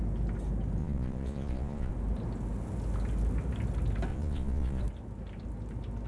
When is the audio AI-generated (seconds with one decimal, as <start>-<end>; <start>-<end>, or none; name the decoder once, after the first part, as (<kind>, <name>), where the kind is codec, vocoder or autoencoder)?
0.8-1.9 (vocoder, Vocos); 4.1-4.8